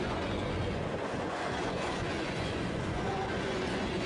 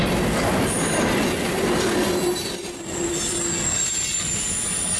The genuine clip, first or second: second